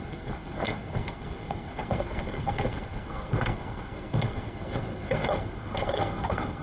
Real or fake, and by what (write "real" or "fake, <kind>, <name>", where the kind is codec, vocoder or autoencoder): fake, codec, SNAC